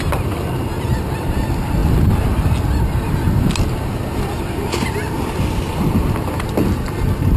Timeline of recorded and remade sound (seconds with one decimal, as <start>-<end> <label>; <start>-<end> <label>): 0.0-7.4 recorded